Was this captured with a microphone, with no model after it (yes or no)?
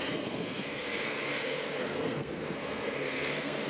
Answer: no